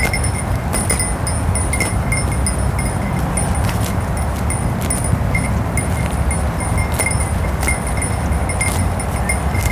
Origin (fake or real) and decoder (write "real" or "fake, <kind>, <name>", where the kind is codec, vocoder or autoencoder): real